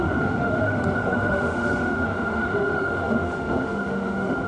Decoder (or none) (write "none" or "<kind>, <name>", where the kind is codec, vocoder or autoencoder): autoencoder, DAC-VAE